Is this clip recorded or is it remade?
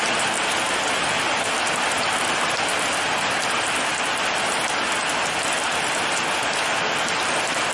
recorded